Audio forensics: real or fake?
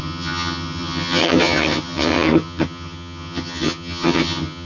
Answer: fake